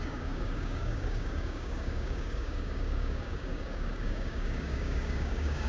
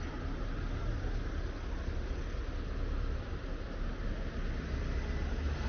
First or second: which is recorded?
second